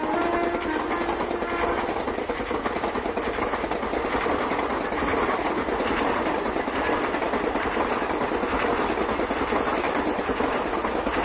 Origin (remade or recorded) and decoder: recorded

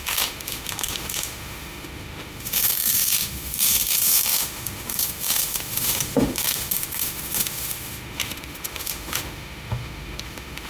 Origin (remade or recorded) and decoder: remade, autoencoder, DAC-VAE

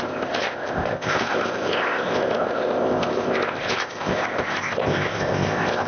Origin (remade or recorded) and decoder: remade, codec, ZipCodec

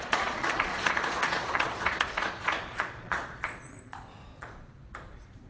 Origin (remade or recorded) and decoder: remade, vocoder, Vocos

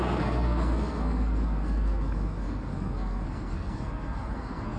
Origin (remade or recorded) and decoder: remade, codec, SNAC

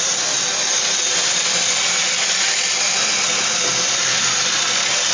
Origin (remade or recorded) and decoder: recorded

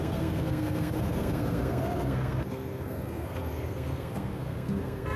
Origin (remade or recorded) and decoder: remade, codec, SNAC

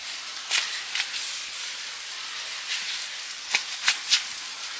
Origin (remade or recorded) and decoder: recorded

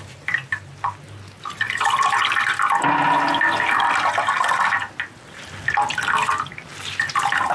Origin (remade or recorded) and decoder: recorded